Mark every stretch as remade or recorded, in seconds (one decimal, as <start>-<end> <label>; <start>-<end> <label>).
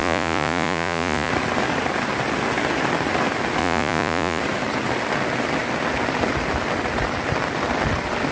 0.0-1.3 remade; 1.3-3.6 recorded; 3.6-4.4 remade; 4.4-8.3 recorded